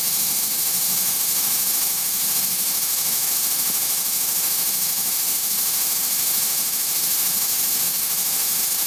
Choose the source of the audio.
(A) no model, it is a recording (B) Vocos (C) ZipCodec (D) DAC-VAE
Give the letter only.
D